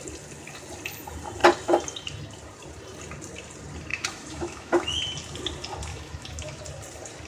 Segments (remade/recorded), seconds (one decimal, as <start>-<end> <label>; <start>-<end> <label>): 0.0-3.9 recorded; 3.9-5.0 remade; 5.0-5.9 recorded; 5.9-6.6 remade; 6.6-7.3 recorded